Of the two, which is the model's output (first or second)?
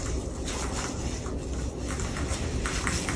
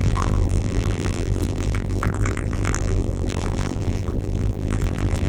second